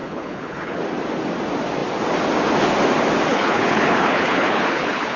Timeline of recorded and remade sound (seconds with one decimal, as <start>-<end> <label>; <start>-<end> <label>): 0.0-0.8 remade; 0.8-3.3 recorded; 3.3-5.2 remade